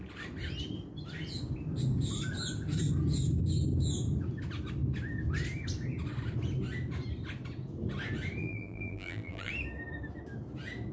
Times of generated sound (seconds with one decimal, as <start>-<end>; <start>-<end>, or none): 8.4-9.5